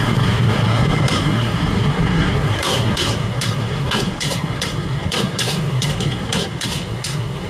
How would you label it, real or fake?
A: fake